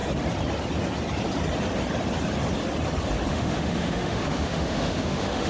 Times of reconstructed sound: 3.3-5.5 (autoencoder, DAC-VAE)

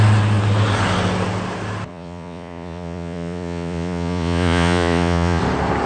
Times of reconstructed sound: 1.9-5.4 (vocoder, Vocos)

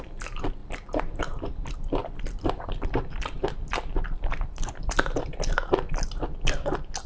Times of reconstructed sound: 2.0-5.3 (vocoder, BigVGAN v2)